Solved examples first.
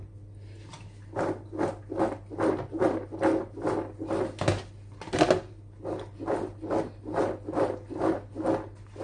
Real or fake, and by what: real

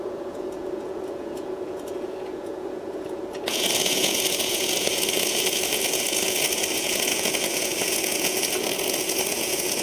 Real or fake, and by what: fake, vocoder, Vocos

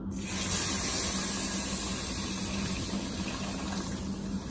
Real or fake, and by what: real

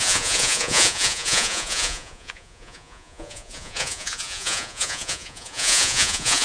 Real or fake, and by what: fake, vocoder, Vocos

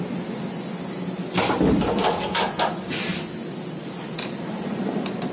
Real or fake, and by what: real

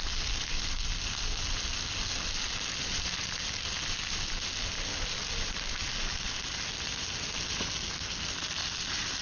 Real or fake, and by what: real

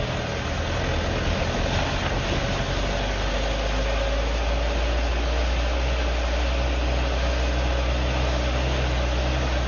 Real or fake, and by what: real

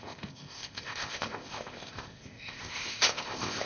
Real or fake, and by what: fake, codec, ZipCodec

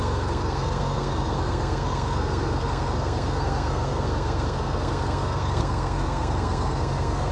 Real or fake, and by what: fake, codec, SNAC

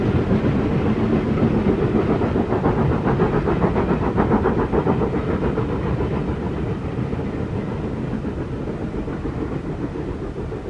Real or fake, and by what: real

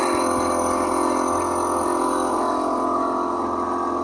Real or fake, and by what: real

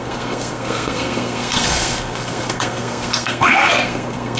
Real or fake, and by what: fake, codec, SNAC